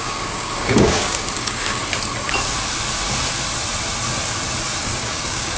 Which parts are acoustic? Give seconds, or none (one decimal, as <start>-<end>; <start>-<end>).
1.8-4.8